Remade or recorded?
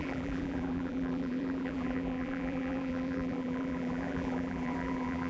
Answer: remade